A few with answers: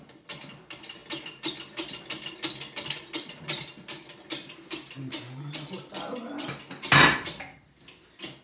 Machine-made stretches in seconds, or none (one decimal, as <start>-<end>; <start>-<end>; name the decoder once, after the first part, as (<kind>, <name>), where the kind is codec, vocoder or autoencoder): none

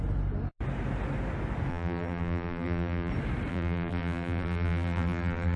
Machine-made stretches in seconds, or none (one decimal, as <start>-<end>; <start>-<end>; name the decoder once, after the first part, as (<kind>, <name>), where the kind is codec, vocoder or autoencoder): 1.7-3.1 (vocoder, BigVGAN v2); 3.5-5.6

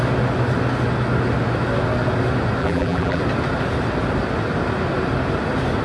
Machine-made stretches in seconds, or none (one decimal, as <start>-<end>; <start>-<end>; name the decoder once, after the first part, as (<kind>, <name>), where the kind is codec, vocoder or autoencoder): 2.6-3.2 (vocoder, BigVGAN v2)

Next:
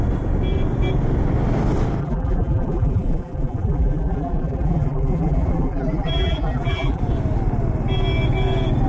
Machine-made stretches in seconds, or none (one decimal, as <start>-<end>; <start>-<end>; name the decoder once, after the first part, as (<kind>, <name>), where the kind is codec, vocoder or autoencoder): 2.0-7.0 (vocoder, BigVGAN v2)

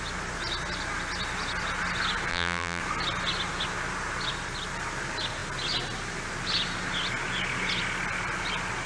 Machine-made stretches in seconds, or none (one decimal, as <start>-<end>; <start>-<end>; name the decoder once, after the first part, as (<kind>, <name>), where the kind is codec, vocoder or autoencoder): 2.3-2.8 (vocoder, BigVGAN v2)

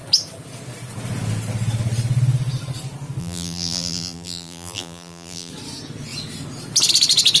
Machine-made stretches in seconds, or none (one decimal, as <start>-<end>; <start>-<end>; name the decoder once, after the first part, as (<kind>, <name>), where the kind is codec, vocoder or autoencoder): 3.2-5.5 (vocoder, BigVGAN v2)

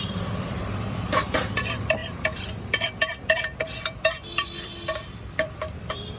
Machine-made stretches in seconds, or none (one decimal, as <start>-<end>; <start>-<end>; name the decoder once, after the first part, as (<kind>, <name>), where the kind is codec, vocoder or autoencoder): 0.0-6.2 (vocoder, BigVGAN v2)

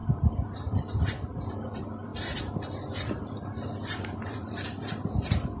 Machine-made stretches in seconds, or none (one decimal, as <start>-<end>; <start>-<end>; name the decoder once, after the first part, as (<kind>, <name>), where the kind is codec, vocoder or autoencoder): 0.0-1.0 (vocoder, BigVGAN v2); 2.1-5.6